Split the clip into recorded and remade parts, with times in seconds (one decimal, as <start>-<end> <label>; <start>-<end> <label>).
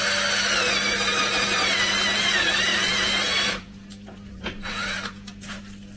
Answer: 0.0-2.7 recorded; 2.7-5.6 remade; 5.6-6.0 recorded